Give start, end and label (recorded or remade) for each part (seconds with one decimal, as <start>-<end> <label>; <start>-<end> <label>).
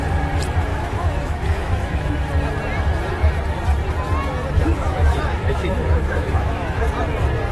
0.0-0.7 recorded; 0.7-2.1 remade; 2.1-4.6 recorded; 4.6-6.8 remade; 6.8-7.5 recorded